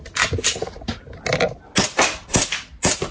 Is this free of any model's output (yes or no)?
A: yes